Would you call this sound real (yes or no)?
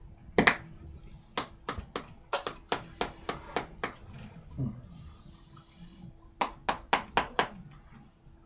yes